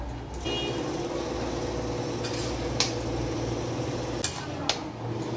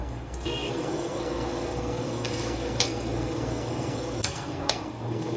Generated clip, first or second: second